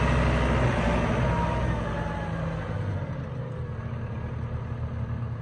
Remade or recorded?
recorded